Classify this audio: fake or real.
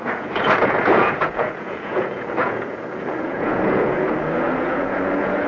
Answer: fake